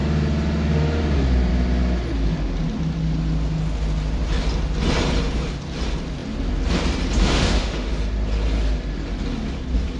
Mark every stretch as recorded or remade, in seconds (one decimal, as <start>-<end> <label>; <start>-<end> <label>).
0.0-7.2 recorded; 7.2-7.9 remade; 7.9-10.0 recorded